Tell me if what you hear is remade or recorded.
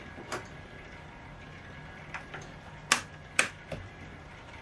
remade